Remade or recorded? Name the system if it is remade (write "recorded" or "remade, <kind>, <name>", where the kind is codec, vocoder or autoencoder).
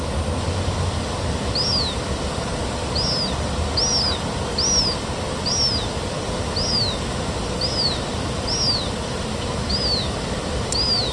recorded